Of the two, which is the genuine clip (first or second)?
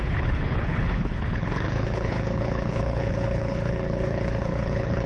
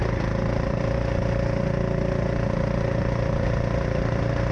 second